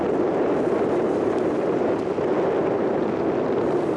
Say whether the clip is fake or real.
real